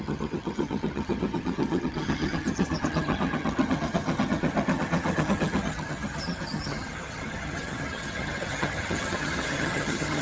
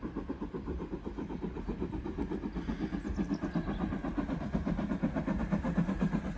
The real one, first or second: second